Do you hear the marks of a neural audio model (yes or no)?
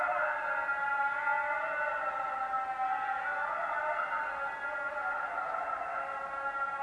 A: no